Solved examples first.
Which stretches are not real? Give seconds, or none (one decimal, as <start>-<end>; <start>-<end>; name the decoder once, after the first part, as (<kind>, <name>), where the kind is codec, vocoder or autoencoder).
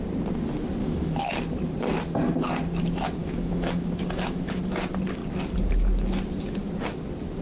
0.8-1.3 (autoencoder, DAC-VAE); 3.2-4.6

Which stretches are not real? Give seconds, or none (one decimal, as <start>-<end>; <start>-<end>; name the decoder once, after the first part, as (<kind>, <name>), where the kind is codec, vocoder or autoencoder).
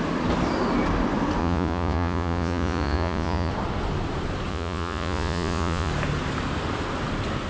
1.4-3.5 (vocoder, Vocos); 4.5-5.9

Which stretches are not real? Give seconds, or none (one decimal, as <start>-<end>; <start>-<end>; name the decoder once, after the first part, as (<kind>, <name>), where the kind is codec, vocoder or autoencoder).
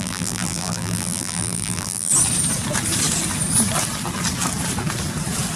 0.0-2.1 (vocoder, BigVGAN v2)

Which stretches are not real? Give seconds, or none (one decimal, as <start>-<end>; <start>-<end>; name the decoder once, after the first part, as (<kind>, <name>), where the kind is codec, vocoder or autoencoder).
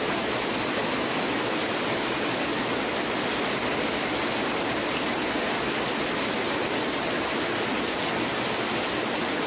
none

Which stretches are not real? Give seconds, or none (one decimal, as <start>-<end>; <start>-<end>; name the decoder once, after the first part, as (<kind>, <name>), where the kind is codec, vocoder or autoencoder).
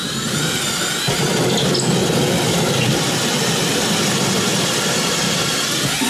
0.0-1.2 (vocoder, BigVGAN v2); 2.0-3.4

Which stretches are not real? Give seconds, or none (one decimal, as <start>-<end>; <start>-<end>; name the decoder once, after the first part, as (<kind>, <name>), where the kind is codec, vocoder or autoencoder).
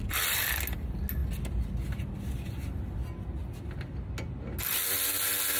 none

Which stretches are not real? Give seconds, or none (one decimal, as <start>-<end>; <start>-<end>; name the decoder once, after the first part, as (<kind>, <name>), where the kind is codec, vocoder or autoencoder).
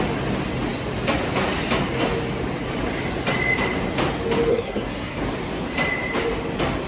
4.5-5.2 (codec, SNAC)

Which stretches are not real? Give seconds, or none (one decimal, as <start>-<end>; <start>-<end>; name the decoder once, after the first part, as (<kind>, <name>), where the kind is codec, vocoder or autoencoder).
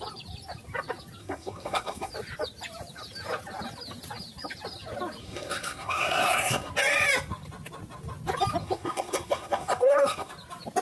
1.2-2.1 (codec, SNAC); 5.2-6.7; 8.6-10.3